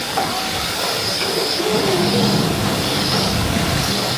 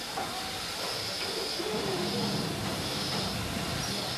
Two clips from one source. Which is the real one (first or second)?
second